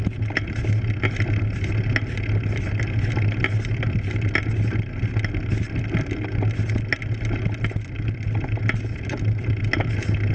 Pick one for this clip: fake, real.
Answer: real